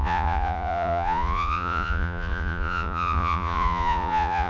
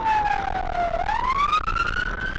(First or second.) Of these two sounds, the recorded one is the second